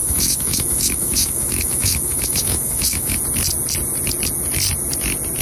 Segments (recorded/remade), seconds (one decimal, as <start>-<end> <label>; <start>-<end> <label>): 0.0-3.2 remade; 3.2-5.4 recorded